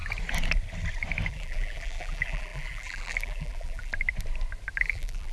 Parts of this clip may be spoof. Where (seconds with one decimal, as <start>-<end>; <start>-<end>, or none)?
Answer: 1.3-3.9; 4.8-5.3